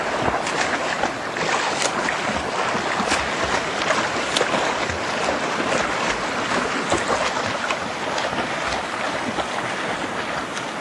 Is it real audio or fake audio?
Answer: real